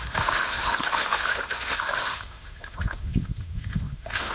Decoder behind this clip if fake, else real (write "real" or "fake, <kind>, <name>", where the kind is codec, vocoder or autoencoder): fake, autoencoder, DAC-VAE